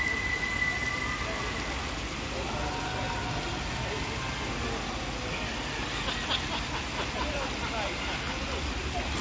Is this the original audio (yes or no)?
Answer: yes